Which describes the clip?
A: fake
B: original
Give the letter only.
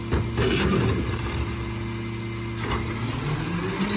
B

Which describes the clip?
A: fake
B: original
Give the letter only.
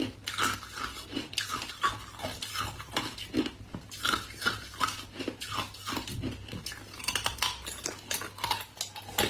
B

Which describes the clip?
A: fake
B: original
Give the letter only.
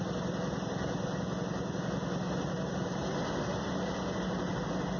B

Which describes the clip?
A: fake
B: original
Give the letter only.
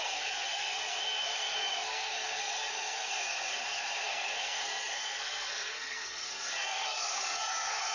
A